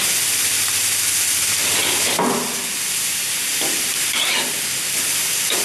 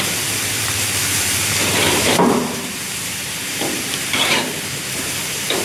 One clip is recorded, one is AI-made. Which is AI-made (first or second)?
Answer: second